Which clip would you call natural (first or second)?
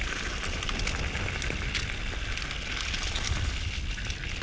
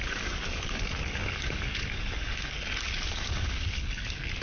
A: first